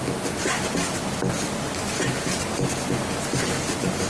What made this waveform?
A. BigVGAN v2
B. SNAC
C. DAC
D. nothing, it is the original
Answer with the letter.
D